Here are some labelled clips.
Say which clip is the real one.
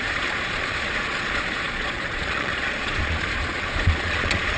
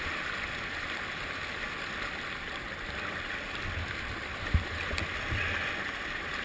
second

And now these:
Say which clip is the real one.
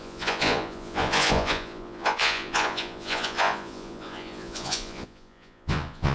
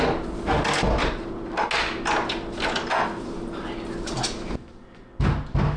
second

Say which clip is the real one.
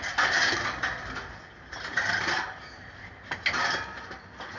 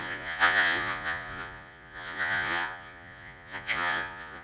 first